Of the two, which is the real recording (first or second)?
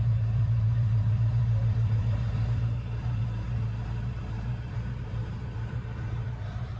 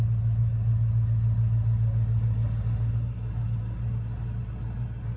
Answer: second